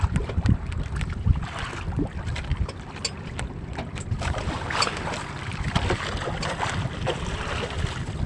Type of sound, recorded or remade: recorded